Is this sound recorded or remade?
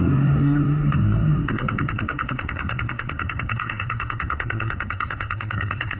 remade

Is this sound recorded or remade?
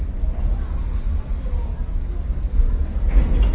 recorded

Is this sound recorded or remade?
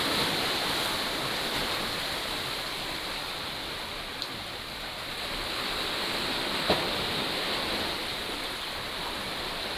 remade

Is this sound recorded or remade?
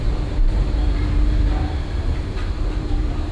remade